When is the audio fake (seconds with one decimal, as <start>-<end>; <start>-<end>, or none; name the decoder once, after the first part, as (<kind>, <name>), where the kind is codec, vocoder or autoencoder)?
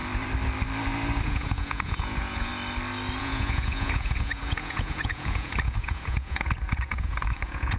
1.2-2.5 (vocoder, Vocos); 3.2-7.8